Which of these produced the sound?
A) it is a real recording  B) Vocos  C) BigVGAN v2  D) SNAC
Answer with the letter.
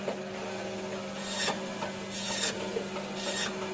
A